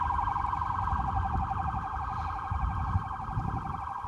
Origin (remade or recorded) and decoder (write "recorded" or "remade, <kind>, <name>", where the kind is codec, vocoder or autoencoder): recorded